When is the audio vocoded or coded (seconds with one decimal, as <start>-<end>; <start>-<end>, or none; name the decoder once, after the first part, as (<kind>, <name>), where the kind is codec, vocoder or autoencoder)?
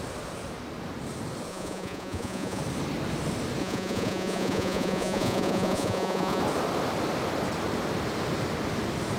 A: 1.5-2.6 (vocoder, Vocos); 3.6-6.4